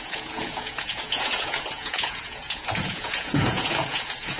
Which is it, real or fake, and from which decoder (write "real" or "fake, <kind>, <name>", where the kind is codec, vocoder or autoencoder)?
fake, vocoder, Vocos